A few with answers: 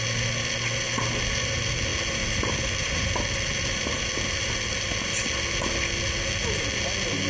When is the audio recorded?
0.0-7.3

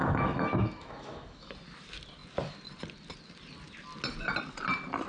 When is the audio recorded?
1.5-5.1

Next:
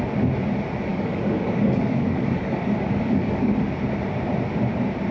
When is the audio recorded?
0.0-0.9; 3.6-5.1

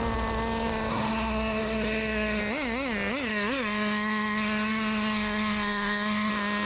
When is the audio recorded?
0.0-0.9; 2.4-3.3; 6.3-6.7

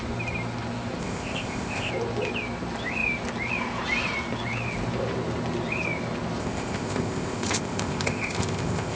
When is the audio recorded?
0.0-1.0; 1.9-6.4

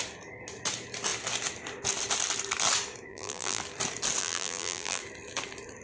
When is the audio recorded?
0.0-3.1; 3.6-4.2; 5.0-5.8

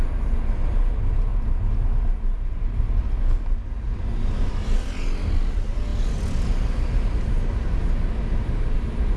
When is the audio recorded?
0.0-9.2

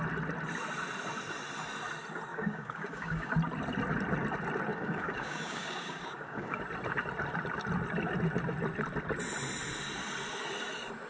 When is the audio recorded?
0.0-2.3; 3.3-4.7; 6.6-11.1